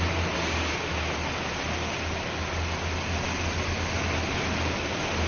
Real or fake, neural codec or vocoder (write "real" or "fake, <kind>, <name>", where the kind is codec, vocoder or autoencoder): real